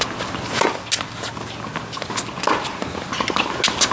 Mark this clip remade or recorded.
recorded